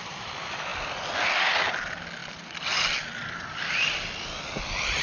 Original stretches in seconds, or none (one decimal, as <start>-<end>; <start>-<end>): 0.0-5.0